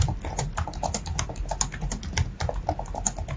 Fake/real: real